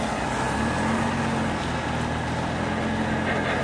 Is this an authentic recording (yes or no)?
yes